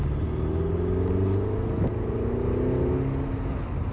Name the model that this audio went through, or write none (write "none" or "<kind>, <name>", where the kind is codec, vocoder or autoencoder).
none